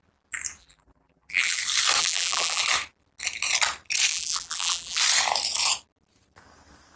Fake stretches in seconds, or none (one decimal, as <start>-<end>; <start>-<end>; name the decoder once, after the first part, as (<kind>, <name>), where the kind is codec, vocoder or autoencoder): 0.6-1.6 (vocoder, BigVGAN v2); 2.0-2.6; 4.1-5.0